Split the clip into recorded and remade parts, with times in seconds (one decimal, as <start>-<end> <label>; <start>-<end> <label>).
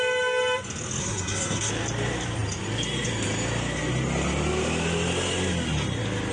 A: 0.0-1.0 recorded; 1.0-1.7 remade; 1.7-6.3 recorded